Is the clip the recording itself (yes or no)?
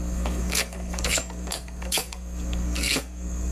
no